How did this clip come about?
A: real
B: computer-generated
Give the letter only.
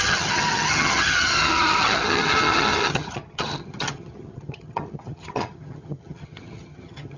B